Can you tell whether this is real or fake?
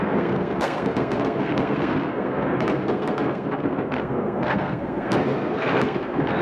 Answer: fake